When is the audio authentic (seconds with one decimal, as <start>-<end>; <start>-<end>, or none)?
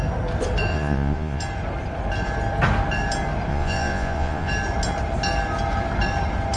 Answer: 0.0-0.7; 1.4-3.5; 4.5-6.6